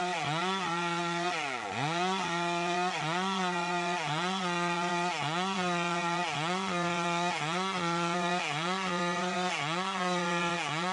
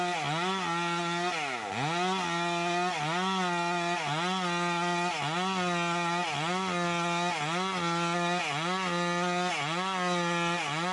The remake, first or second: first